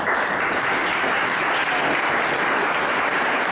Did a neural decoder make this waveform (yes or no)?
no